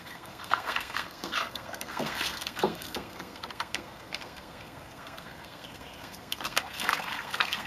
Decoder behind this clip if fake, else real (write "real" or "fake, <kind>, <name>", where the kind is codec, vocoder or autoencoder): fake, codec, SNAC